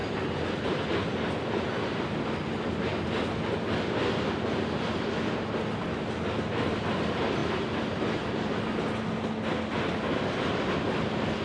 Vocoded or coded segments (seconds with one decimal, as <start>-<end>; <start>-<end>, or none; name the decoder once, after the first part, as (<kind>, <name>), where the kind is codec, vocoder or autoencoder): 0.0-0.7 (vocoder, BigVGAN v2); 7.4-8.0